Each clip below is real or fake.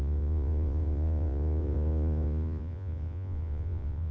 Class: fake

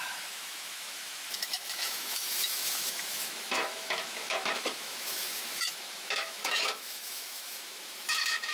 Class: fake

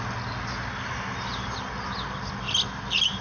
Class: real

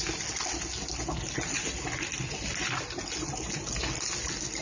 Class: real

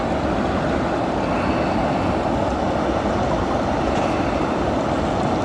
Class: real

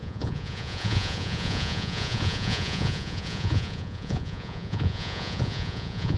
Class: fake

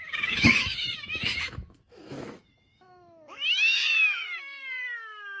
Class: fake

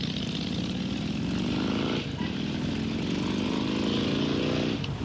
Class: real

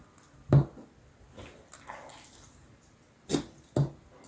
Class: real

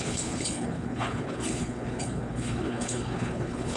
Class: fake